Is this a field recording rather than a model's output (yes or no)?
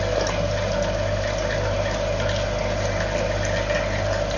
yes